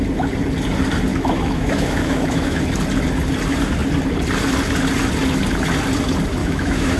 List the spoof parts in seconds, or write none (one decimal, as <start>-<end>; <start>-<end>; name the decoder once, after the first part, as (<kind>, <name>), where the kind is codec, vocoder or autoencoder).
1.1-2.6 (autoencoder, DAC-VAE); 6.4-7.0